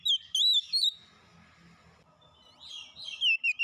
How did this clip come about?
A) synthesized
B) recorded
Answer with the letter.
B